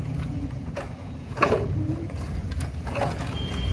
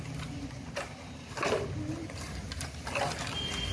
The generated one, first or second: first